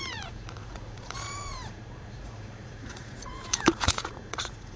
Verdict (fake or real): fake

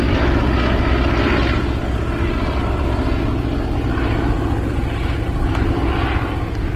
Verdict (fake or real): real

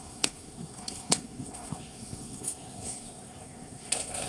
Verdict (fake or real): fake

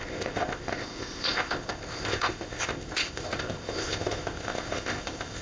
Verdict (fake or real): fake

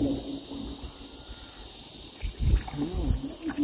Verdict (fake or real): real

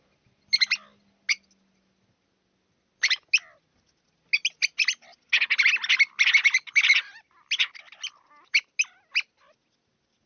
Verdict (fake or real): real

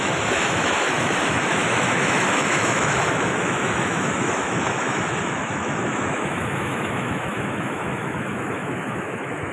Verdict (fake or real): fake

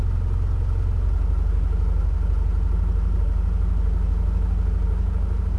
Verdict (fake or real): real